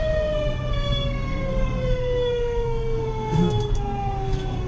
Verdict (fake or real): fake